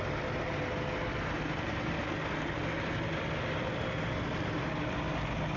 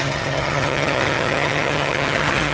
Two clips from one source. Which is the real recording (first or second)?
first